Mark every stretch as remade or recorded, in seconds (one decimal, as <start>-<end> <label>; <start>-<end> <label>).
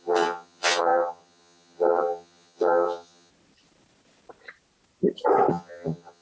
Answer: 0.0-3.3 remade; 3.3-5.5 recorded; 5.5-6.2 remade